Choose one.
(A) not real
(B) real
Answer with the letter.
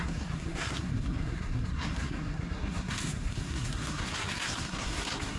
A